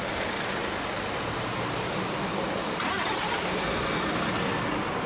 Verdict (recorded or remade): recorded